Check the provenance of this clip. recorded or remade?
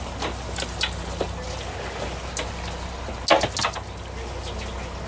recorded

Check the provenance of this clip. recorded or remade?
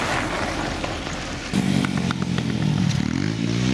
recorded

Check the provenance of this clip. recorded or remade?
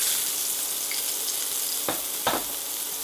recorded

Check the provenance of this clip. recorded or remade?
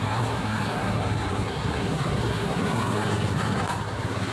remade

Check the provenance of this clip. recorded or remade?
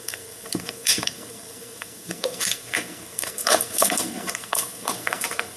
remade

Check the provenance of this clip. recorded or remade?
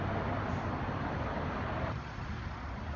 recorded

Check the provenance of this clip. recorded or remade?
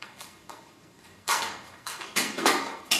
remade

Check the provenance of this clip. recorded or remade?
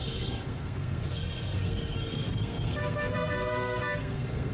remade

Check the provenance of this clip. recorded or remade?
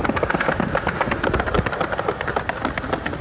recorded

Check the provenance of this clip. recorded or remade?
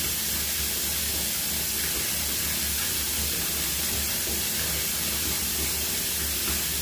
recorded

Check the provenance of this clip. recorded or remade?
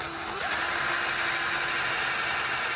recorded